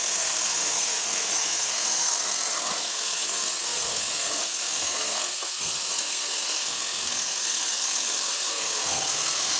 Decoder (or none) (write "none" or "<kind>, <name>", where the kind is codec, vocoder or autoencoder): codec, SNAC